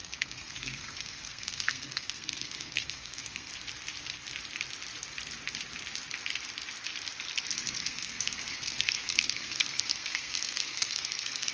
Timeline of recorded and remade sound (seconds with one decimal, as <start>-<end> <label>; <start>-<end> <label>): 0.0-3.5 remade; 3.5-7.8 recorded; 7.8-11.5 remade